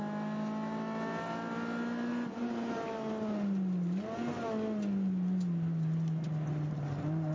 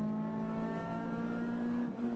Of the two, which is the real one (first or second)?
first